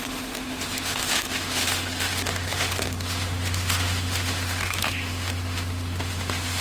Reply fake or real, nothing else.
fake